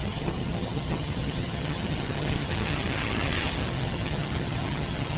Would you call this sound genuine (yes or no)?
no